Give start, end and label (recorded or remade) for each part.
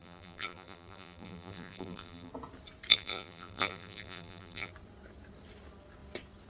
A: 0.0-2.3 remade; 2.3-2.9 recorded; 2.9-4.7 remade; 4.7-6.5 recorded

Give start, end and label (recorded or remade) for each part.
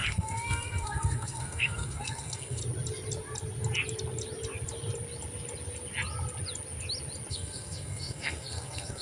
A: 0.0-2.6 remade; 2.6-7.3 recorded; 7.3-9.0 remade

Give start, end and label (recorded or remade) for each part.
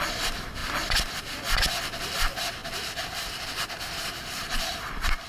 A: 0.0-5.3 recorded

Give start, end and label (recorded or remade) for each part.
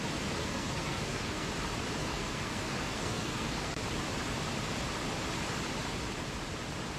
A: 0.0-0.4 recorded; 0.4-1.5 remade; 1.5-2.0 recorded; 2.0-3.8 remade; 3.8-7.0 recorded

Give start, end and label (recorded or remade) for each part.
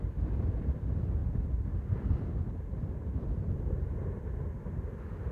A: 0.0-5.3 recorded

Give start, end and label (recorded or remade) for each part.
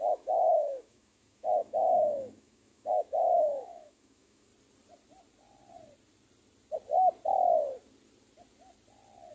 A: 0.0-4.5 remade; 4.5-9.3 recorded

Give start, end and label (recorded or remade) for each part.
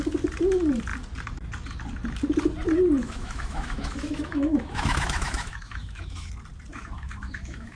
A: 0.0-3.0 recorded; 3.0-6.3 remade; 6.3-6.7 recorded; 6.7-7.8 remade